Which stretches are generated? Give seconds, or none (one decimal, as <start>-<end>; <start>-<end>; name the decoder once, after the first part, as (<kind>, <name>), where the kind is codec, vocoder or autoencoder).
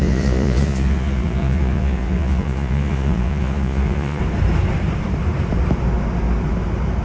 0.0-4.2 (vocoder, Vocos)